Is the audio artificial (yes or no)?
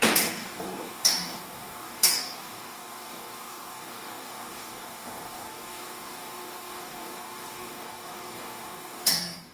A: yes